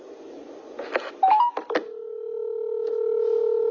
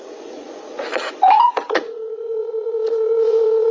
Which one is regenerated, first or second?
second